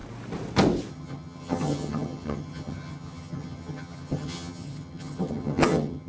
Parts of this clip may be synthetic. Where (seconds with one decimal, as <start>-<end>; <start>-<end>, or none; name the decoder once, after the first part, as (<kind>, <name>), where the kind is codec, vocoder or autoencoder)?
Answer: 0.9-6.1 (vocoder, HiFi-GAN)